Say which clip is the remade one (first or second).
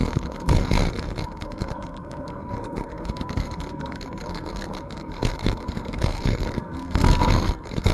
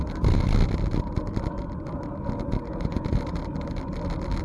first